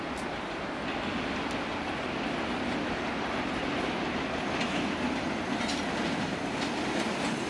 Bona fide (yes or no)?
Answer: yes